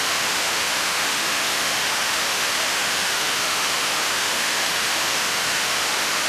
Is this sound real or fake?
fake